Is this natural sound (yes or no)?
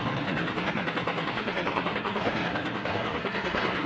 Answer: no